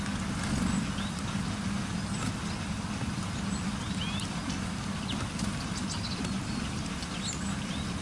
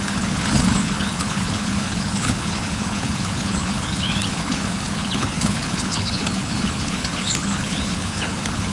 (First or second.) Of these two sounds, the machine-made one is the second